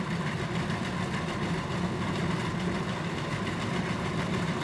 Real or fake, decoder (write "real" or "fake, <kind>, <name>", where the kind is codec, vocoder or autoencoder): real